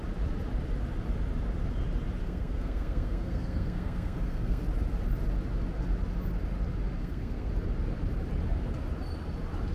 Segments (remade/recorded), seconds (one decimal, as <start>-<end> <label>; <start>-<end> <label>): 0.0-2.2 recorded; 2.2-4.6 remade; 4.6-7.0 recorded; 7.0-7.5 remade; 7.5-9.7 recorded